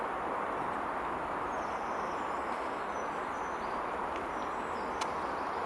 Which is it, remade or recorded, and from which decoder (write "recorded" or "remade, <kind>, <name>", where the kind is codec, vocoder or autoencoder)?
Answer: recorded